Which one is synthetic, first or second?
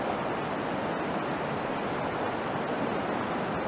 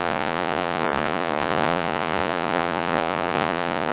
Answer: second